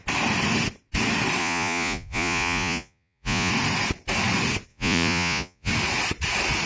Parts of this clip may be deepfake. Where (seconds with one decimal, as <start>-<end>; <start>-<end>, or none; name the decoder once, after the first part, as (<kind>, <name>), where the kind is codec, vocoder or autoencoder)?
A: 1.4-3.5 (vocoder, Vocos); 4.7-5.7